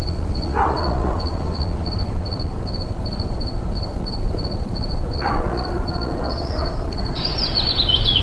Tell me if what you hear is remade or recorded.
remade